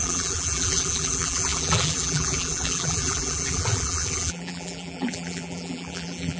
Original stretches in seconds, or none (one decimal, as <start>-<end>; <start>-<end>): none